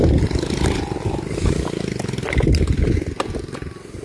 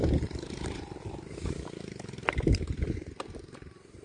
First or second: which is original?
first